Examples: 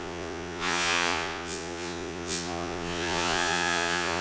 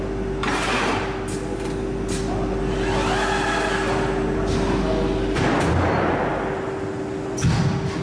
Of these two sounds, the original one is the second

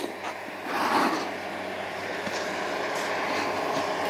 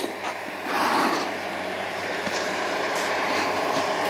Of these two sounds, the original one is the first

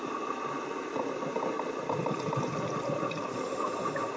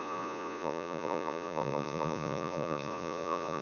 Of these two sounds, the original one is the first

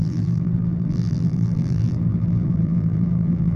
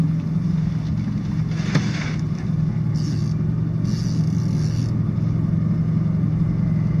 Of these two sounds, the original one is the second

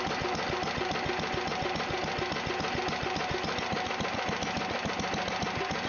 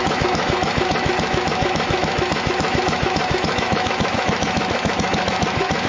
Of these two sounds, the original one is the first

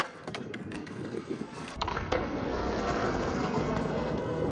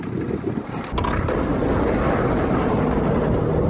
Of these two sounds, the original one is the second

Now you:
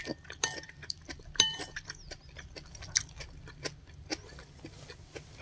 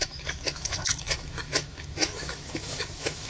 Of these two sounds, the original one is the first